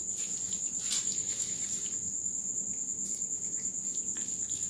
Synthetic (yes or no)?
no